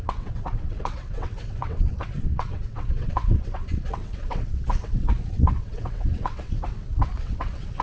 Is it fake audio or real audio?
fake